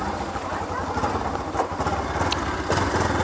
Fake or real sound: real